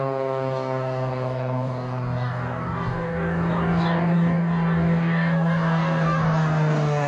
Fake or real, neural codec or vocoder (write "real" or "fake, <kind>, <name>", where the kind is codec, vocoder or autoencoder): fake, codec, DAC